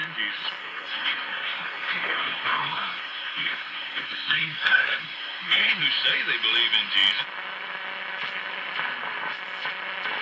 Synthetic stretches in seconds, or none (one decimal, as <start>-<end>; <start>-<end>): 0.6-5.8